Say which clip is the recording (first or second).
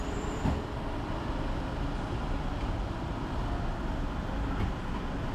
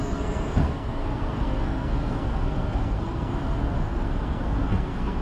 first